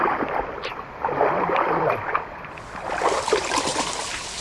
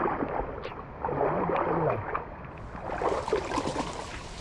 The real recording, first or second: second